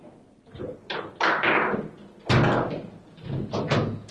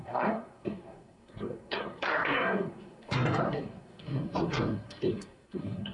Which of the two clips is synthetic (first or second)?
second